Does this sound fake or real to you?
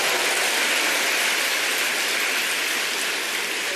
real